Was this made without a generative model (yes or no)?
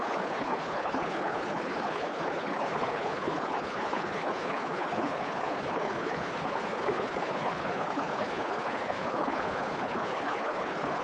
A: no